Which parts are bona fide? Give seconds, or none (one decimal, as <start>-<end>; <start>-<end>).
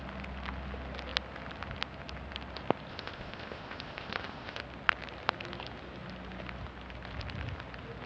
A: 0.0-2.9; 4.6-8.1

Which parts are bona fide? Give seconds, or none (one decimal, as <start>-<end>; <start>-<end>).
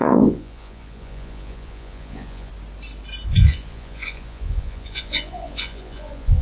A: 2.5-3.3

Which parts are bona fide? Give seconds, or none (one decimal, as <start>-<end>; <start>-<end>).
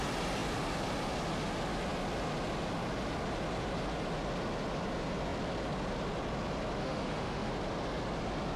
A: 0.0-6.8; 7.5-8.6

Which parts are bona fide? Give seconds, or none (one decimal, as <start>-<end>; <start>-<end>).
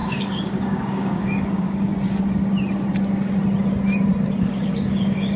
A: 1.9-4.4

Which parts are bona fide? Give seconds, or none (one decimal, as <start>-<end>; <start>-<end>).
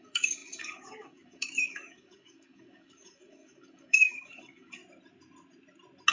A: 4.8-6.1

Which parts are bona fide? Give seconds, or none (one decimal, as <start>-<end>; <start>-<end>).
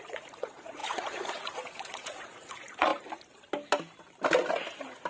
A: 2.9-5.1